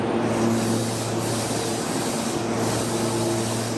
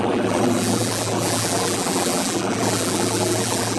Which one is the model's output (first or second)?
second